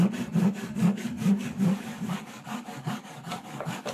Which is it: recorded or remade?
remade